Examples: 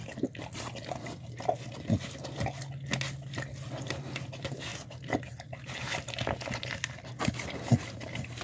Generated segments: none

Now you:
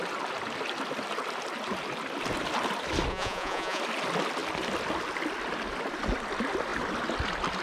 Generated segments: 3.1-3.8 (vocoder, Vocos)

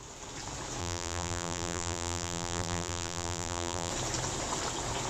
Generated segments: 0.8-3.9 (vocoder, BigVGAN v2)

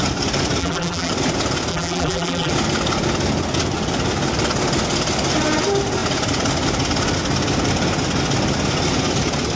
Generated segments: 0.6-1.1 (vocoder, BigVGAN v2); 1.7-2.5

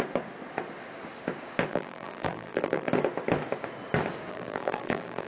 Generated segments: 1.7-2.9 (vocoder, BigVGAN v2); 4.3-5.3